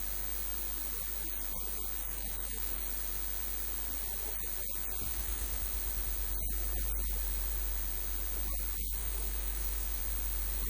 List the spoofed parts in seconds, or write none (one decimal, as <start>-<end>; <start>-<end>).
2.0-2.8; 5.1-5.6; 9.0-10.0